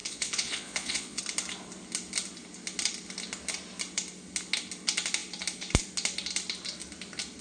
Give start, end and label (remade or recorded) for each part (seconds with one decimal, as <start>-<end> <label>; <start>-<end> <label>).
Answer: 0.0-1.2 remade; 1.2-7.4 recorded

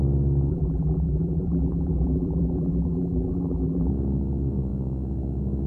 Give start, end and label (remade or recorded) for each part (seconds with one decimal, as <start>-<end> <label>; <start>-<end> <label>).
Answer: 0.0-0.5 recorded; 0.5-3.9 remade; 3.9-5.7 recorded

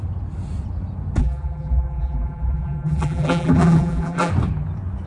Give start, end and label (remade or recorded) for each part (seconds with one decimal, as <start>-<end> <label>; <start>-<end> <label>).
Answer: 0.0-1.2 recorded; 1.2-4.3 remade; 4.3-5.1 recorded

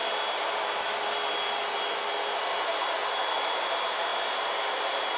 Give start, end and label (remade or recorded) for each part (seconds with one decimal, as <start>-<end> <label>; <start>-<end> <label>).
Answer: 0.0-5.2 recorded